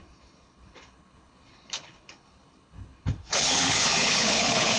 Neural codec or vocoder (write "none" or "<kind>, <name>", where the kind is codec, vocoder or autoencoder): codec, HILCodec